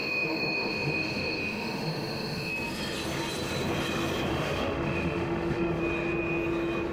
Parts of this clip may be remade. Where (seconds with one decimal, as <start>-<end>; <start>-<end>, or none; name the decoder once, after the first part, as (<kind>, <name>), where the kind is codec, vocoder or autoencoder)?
0.0-2.5 (autoencoder, DAC-VAE); 4.3-5.8